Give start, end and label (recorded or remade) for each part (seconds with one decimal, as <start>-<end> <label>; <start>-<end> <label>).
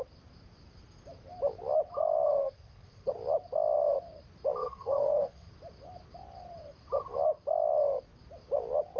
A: 0.0-2.4 recorded; 2.4-3.1 remade; 3.1-4.6 recorded; 4.6-5.5 remade; 5.5-9.0 recorded